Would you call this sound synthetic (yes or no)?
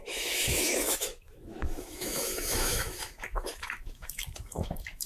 yes